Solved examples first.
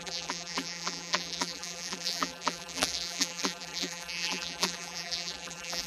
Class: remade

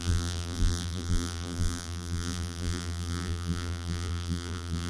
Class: remade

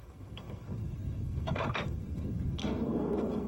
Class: remade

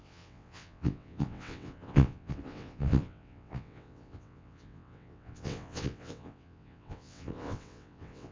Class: remade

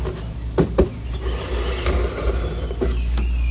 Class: recorded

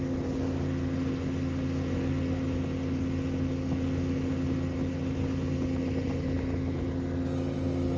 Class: recorded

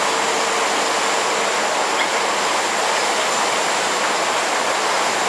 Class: recorded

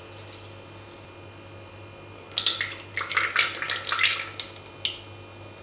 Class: recorded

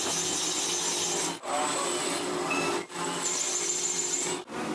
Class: recorded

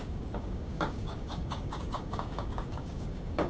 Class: remade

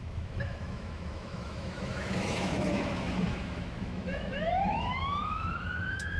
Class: remade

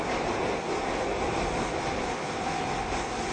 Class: recorded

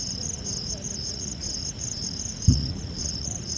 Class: remade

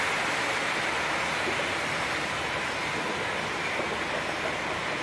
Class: recorded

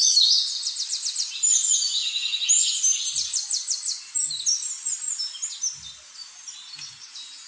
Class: recorded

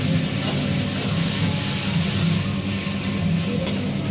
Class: recorded